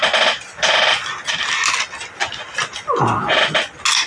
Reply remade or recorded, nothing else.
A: recorded